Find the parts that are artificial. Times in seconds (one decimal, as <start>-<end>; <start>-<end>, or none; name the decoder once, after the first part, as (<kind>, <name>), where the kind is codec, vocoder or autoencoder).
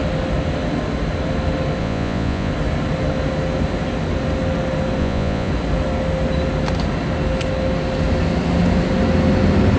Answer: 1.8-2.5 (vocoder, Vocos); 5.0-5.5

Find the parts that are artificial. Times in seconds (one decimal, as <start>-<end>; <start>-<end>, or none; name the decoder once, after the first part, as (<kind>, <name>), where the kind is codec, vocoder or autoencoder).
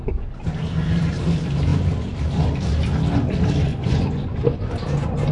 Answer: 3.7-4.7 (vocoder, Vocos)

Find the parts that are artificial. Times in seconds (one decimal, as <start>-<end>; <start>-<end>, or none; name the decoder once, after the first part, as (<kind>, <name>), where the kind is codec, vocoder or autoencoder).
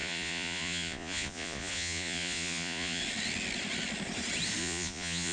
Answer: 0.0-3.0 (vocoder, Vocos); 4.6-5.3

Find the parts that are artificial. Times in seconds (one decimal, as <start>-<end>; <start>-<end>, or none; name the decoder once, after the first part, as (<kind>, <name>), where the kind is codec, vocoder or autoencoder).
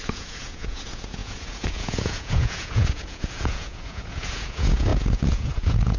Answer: 0.0-6.0 (vocoder, Vocos)